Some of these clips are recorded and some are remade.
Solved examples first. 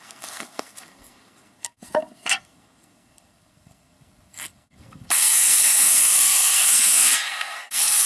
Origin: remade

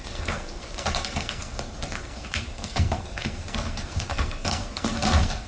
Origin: remade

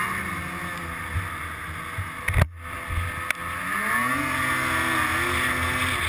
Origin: recorded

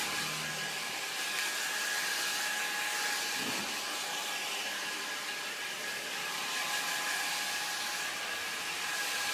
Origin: recorded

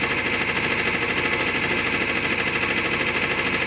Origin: recorded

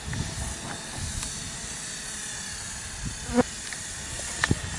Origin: recorded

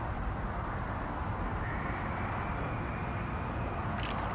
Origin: recorded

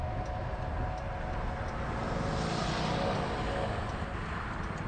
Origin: recorded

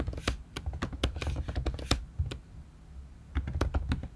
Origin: recorded